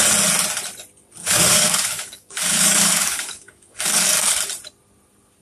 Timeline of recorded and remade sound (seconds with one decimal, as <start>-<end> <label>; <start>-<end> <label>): 0.0-1.2 recorded; 1.2-4.4 remade; 4.4-5.4 recorded